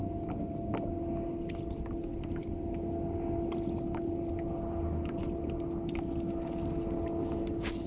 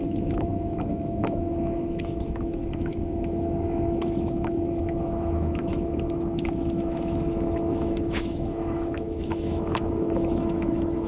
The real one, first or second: first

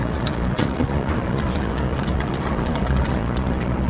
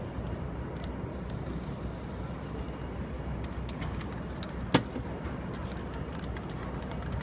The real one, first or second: second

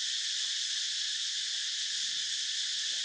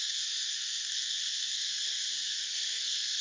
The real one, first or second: first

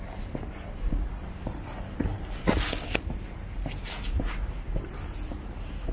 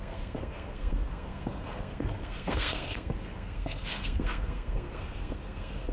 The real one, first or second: first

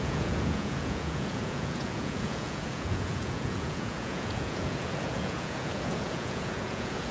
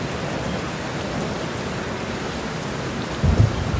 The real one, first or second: second